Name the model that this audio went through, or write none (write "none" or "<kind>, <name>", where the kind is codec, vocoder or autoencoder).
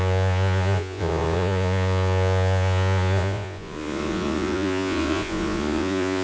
vocoder, Vocos